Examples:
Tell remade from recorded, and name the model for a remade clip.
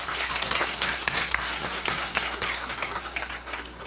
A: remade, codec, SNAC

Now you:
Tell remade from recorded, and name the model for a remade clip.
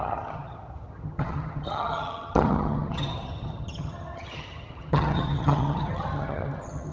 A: remade, vocoder, HiFi-GAN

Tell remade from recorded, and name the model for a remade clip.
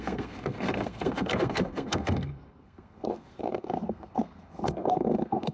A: remade, codec, SNAC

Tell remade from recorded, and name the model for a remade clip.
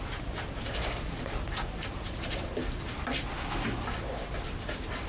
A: recorded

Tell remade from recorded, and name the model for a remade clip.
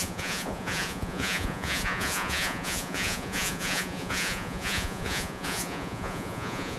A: remade, vocoder, Vocos